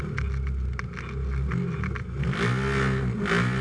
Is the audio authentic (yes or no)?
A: yes